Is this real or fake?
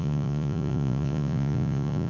fake